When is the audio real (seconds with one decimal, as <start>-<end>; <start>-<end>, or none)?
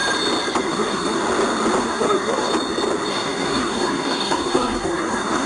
0.0-0.6; 1.2-1.8; 2.5-3.1